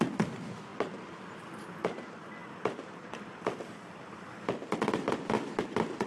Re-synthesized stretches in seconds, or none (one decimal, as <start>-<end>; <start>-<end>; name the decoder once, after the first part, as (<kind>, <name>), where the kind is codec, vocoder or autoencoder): 2.4-6.1 (vocoder, BigVGAN v2)